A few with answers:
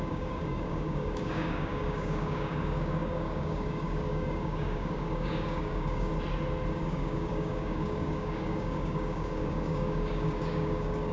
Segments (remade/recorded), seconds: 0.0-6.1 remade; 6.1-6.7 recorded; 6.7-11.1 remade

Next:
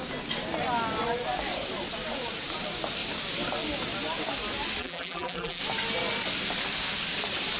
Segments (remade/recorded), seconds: 0.0-4.8 recorded; 4.8-5.6 remade; 5.6-7.6 recorded